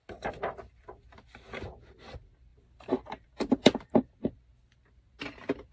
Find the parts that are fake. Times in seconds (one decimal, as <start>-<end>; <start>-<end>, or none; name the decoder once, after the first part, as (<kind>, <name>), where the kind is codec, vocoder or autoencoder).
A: 2.5-4.0 (vocoder, BigVGAN v2)